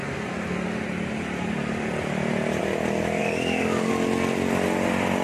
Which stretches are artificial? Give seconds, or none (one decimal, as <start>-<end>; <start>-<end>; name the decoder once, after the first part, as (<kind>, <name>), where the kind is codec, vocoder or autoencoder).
3.2-3.9 (codec, DAC)